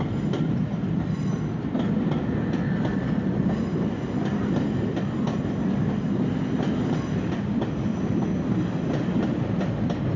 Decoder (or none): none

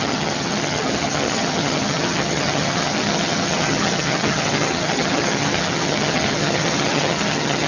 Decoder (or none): vocoder, HiFi-GAN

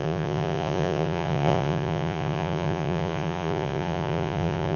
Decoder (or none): vocoder, Vocos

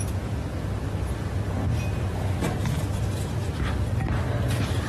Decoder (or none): none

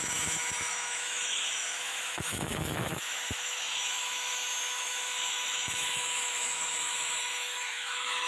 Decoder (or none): autoencoder, DAC-VAE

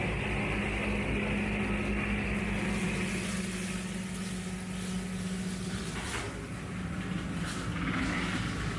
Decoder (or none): none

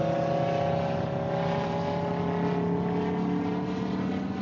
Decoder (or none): none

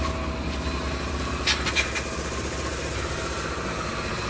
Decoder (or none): none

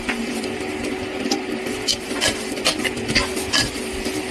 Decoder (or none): none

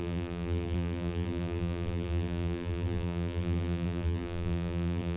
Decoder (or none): vocoder, BigVGAN v2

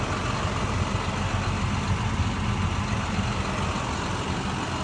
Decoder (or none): none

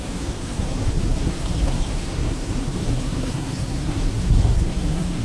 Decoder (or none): codec, SNAC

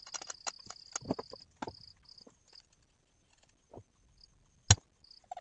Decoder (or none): none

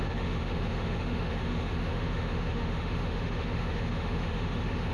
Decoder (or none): autoencoder, DAC-VAE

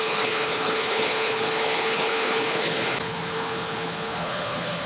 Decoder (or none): codec, HILCodec